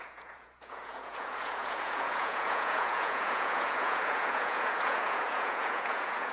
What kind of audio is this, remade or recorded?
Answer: remade